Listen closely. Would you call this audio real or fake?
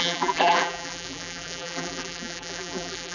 fake